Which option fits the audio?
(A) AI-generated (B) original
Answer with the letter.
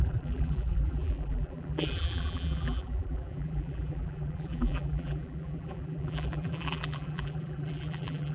A